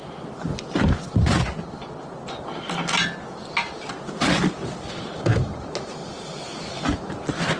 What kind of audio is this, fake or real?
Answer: real